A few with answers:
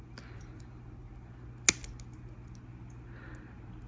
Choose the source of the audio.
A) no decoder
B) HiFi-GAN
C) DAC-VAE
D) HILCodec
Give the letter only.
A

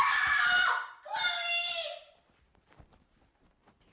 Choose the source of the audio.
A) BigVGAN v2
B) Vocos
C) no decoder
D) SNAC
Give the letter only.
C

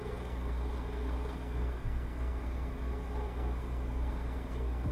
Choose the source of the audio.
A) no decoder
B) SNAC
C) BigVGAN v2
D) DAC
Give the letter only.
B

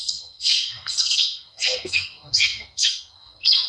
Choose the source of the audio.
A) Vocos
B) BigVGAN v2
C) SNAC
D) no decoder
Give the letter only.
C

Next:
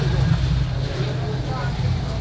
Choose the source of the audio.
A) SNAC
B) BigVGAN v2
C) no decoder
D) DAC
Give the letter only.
C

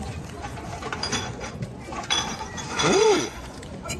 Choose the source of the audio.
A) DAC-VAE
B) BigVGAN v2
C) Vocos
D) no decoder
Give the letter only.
C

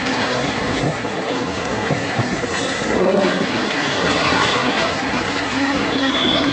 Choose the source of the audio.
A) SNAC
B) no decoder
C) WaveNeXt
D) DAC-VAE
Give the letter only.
A